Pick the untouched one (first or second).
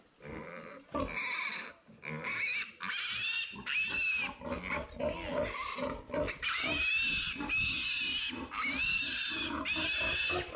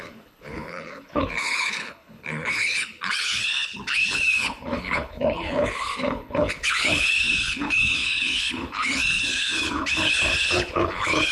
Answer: first